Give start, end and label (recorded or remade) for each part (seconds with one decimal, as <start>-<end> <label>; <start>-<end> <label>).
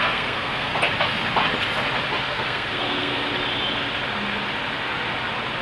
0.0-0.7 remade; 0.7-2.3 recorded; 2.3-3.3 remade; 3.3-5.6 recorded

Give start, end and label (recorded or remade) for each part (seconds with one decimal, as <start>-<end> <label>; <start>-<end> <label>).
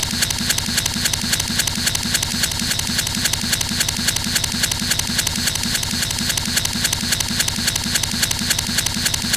0.0-2.3 recorded; 2.3-3.2 remade; 3.2-5.3 recorded; 5.3-6.3 remade; 6.3-9.4 recorded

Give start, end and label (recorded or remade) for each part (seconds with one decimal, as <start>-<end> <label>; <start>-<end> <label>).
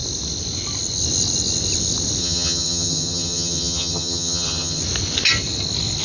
0.0-2.2 recorded; 2.2-4.8 remade; 4.8-6.0 recorded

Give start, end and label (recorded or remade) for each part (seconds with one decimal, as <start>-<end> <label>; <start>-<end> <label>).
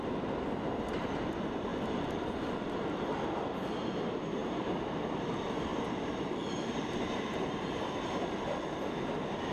0.0-4.4 recorded; 4.4-5.0 remade; 5.0-5.7 recorded; 5.7-8.0 remade; 8.0-9.5 recorded